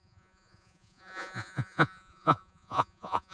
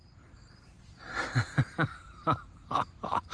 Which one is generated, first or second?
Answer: first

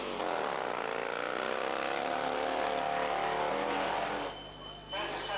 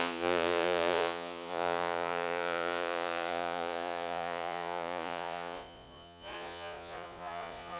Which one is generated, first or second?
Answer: second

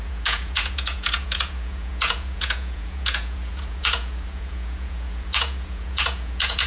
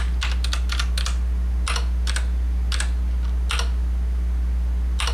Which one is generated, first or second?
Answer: first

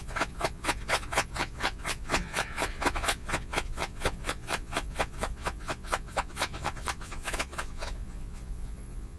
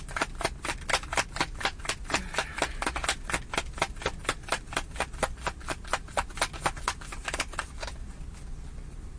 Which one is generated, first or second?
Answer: first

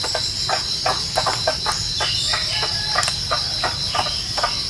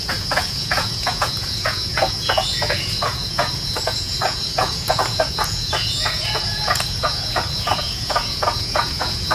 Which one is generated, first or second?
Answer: second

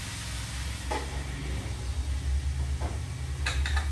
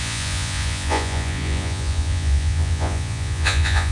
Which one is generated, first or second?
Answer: second